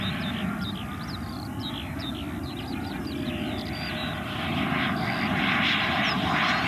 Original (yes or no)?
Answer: yes